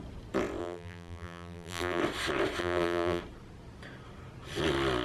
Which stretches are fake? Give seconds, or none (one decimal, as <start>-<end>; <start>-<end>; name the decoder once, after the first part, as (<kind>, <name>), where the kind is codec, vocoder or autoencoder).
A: 0.6-2.0 (vocoder, BigVGAN v2); 2.6-3.2